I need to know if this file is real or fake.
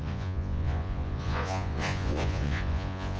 fake